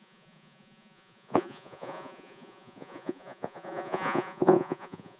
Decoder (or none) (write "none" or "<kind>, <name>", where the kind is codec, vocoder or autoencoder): vocoder, Vocos